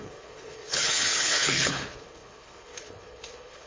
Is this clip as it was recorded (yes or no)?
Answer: no